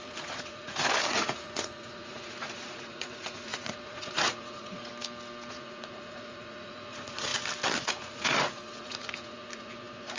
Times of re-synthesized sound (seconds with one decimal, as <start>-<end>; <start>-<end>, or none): 0.0-4.9; 5.5-7.3; 7.8-10.2